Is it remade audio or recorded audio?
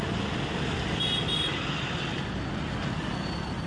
recorded